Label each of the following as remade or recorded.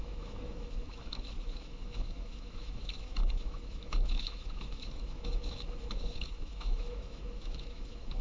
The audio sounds remade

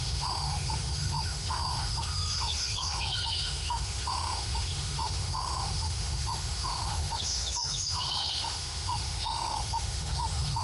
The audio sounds remade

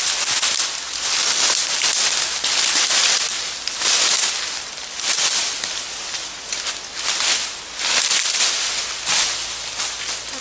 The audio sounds recorded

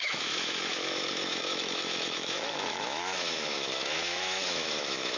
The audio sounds remade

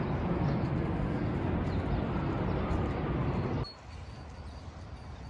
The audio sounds recorded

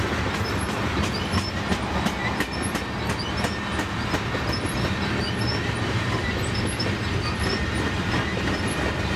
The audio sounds recorded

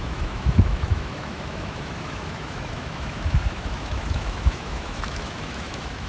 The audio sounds remade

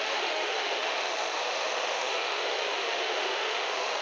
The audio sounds remade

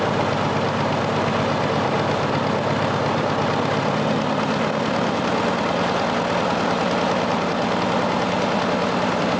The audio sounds recorded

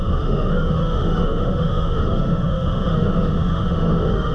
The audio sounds remade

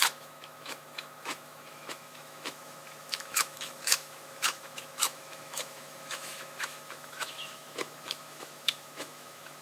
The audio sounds remade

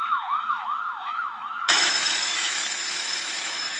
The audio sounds remade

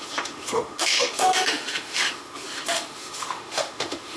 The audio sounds remade